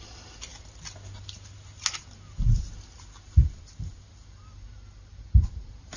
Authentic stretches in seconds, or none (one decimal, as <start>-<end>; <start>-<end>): 0.0-6.0